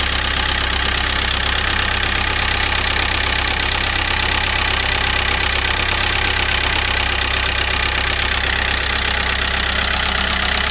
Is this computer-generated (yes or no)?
no